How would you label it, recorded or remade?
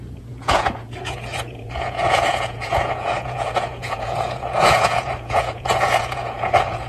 remade